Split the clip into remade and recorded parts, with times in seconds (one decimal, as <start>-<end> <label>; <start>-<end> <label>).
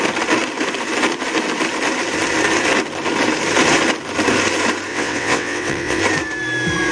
0.0-4.9 recorded; 4.9-6.0 remade; 6.0-6.9 recorded